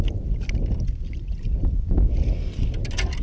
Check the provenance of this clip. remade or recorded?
recorded